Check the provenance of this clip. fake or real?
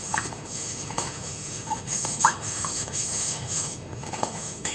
fake